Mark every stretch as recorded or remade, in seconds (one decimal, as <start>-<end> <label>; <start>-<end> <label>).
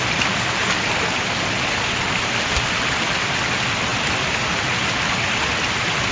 0.0-6.1 recorded